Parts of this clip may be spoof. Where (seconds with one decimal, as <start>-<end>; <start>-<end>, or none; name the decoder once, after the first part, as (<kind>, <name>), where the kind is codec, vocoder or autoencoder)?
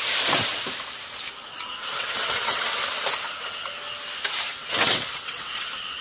1.9-2.8 (vocoder, WaveNeXt); 4.5-5.5